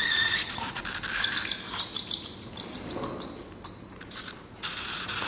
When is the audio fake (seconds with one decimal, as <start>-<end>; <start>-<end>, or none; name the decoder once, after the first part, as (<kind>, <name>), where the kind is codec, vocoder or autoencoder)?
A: 0.0-0.8 (vocoder, Vocos); 4.0-5.3